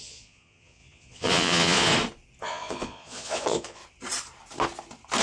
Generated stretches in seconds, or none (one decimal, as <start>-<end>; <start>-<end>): 0.0-1.9; 2.4-3.8